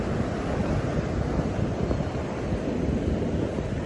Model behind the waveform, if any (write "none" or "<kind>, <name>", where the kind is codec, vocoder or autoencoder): none